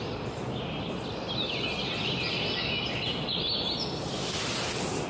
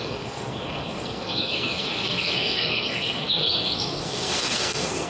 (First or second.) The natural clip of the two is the first